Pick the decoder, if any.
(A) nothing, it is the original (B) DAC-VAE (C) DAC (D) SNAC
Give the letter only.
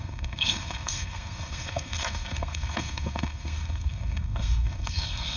D